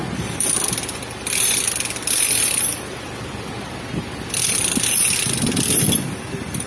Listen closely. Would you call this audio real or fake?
real